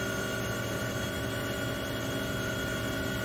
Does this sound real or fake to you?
real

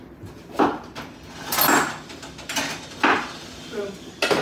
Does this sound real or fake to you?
real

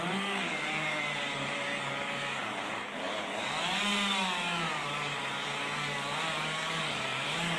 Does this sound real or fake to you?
fake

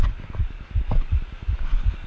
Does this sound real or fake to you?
fake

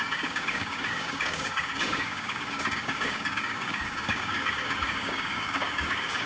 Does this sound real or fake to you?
fake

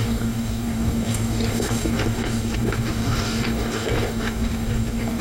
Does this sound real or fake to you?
fake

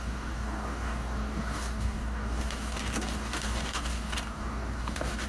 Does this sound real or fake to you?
fake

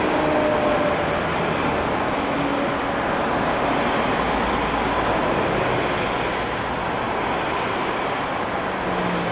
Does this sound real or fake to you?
real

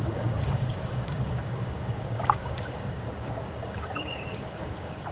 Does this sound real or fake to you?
fake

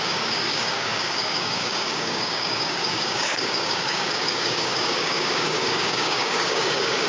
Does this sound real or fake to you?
fake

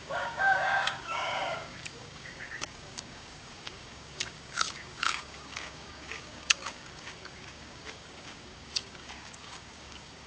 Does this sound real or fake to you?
fake